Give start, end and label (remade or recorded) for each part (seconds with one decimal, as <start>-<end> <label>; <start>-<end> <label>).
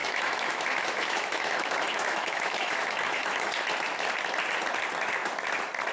0.0-3.5 remade; 3.5-5.9 recorded